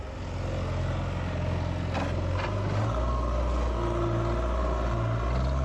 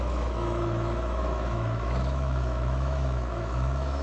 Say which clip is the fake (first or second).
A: second